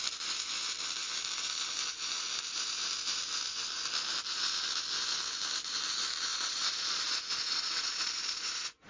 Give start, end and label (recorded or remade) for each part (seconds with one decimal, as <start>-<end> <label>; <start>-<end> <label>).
0.0-6.3 recorded; 6.3-8.9 remade